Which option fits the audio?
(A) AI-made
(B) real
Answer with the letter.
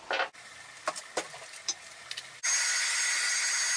B